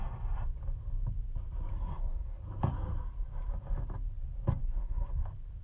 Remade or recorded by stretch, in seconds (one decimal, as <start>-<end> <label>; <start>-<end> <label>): 0.0-1.7 recorded; 1.7-2.4 remade; 2.4-4.6 recorded; 4.6-5.1 remade; 5.1-5.6 recorded